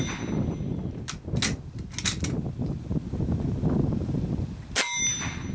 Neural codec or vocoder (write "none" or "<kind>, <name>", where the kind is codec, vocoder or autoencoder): none